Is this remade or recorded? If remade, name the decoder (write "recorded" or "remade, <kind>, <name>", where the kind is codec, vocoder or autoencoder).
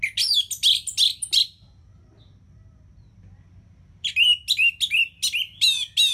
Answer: recorded